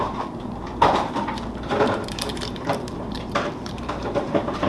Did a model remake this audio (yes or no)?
yes